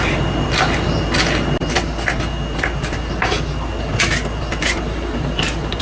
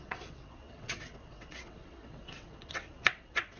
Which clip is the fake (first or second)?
second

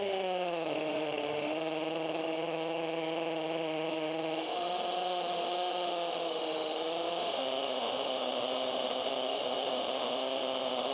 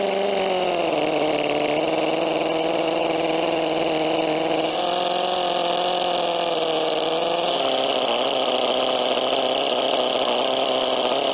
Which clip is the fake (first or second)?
first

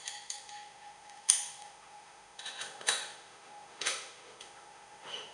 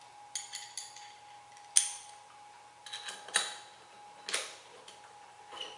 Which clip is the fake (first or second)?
first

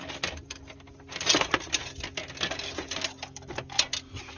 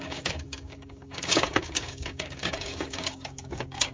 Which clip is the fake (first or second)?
second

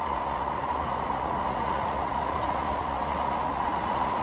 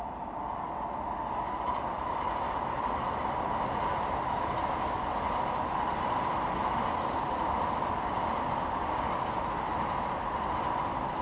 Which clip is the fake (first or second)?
first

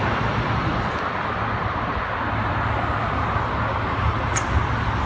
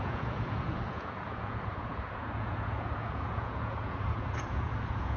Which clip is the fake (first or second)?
second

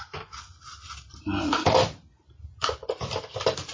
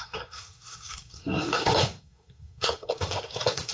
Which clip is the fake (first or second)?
second